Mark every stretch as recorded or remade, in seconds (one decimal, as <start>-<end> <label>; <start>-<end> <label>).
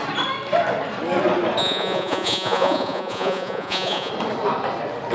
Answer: 0.0-1.6 recorded; 1.6-4.1 remade; 4.1-5.1 recorded